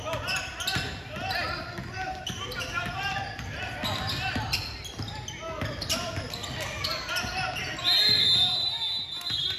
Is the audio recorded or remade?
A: recorded